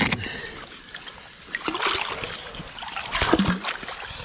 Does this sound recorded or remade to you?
recorded